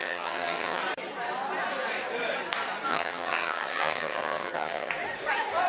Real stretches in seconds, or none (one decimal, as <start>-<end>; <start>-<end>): 0.8-2.9; 4.9-5.7